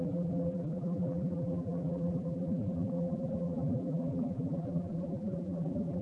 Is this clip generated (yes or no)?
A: yes